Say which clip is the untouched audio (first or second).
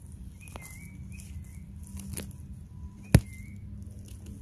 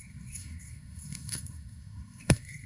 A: first